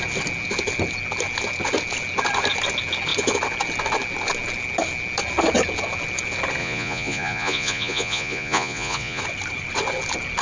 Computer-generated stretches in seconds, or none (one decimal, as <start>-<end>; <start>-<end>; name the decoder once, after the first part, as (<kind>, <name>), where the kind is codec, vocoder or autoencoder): 6.6-9.2 (vocoder, Vocos)